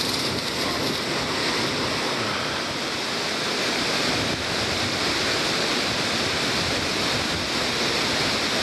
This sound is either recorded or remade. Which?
recorded